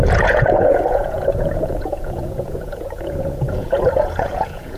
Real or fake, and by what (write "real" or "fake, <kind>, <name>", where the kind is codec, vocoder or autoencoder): fake, vocoder, Vocos